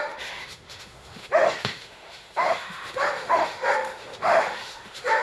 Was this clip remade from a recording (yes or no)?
yes